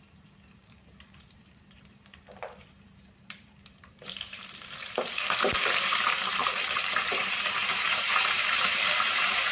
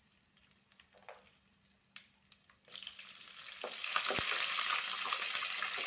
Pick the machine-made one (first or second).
first